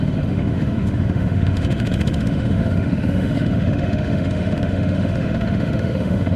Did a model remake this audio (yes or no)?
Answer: yes